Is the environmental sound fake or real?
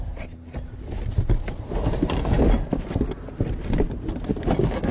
real